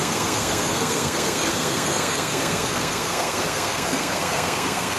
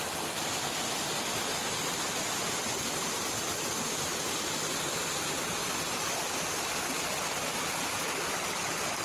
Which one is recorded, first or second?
second